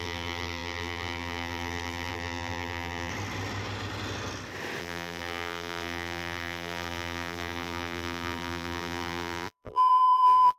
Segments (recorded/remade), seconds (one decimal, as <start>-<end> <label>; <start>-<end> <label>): 0.0-3.1 remade; 3.1-4.8 recorded; 4.8-10.6 remade